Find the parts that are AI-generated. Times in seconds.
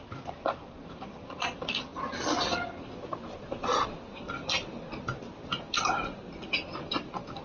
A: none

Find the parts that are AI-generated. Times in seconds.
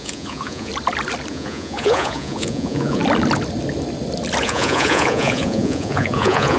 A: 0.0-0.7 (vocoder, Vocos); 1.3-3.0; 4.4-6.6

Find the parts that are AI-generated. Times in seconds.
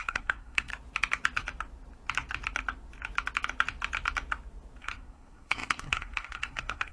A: 0.0-0.7 (codec, SNAC); 4.8-6.9